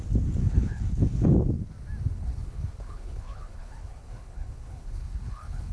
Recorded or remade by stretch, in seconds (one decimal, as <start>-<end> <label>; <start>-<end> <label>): 0.0-0.4 recorded; 0.4-1.3 remade; 1.3-2.1 recorded; 2.1-5.7 remade